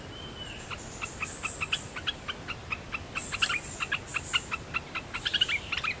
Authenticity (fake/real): real